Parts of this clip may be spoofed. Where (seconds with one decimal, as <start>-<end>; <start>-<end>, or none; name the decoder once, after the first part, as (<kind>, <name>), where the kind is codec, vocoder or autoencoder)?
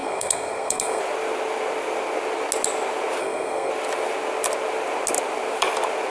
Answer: 0.0-1.0 (codec, SNAC); 3.2-3.7